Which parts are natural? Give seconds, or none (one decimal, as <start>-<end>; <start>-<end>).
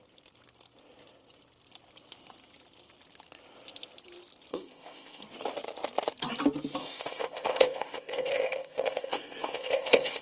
0.0-4.5; 5.2-6.8